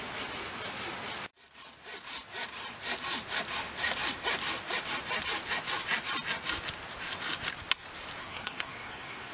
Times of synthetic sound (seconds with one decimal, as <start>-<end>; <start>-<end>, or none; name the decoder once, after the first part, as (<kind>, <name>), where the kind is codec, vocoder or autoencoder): 8.2-9.3 (codec, SNAC)